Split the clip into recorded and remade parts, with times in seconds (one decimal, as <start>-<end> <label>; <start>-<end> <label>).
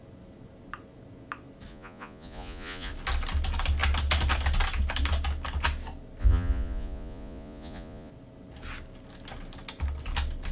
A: 0.0-1.7 recorded; 1.7-2.9 remade; 2.9-6.2 recorded; 6.2-8.1 remade; 8.1-10.5 recorded